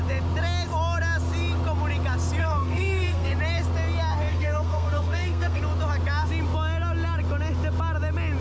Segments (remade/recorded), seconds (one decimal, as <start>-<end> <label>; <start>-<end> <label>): 0.0-2.4 recorded; 2.4-3.3 remade; 3.3-4.3 recorded; 4.3-5.6 remade; 5.6-8.4 recorded